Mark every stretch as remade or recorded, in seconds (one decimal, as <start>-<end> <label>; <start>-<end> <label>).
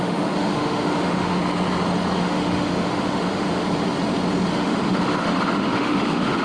0.0-1.4 remade; 1.4-2.2 recorded; 2.2-3.6 remade; 3.6-4.5 recorded; 4.5-6.4 remade